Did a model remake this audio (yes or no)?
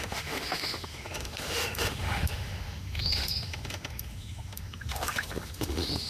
yes